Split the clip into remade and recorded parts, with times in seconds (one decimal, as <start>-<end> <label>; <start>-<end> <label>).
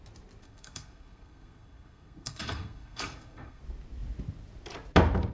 0.0-0.4 recorded; 0.4-3.6 remade; 3.6-5.3 recorded